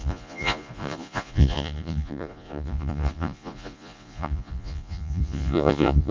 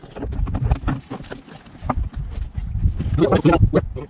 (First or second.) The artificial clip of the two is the first